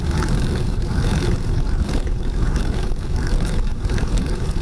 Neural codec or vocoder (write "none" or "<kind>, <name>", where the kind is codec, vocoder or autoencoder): codec, DAC